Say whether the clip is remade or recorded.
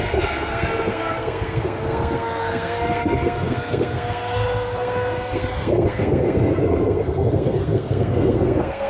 remade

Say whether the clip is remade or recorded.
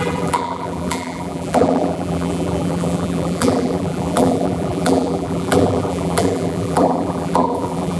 remade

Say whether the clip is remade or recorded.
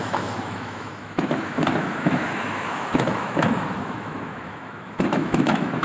remade